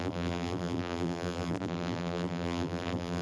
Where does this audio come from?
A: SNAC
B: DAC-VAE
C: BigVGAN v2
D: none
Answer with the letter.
C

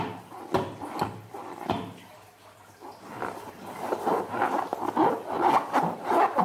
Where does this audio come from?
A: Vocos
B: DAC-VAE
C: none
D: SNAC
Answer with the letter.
C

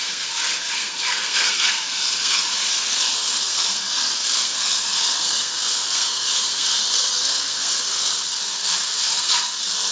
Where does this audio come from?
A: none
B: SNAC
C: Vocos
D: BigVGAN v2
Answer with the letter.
B